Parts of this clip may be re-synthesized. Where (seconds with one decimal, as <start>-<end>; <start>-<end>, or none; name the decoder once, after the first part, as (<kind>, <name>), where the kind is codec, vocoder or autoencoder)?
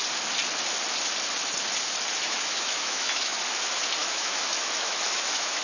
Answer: 2.2-3.4 (autoencoder, DAC-VAE); 4.0-5.6